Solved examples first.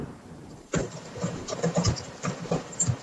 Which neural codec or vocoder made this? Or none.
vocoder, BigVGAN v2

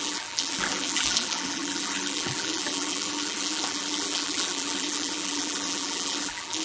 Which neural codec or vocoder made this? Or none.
vocoder, BigVGAN v2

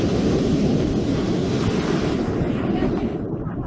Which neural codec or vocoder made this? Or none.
none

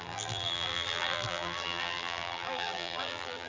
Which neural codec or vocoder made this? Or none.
vocoder, BigVGAN v2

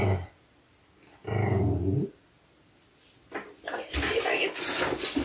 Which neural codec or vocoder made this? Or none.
none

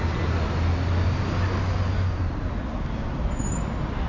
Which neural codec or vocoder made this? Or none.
none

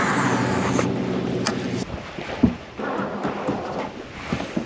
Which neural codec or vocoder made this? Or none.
none